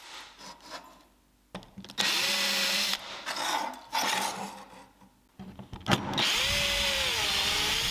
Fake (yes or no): no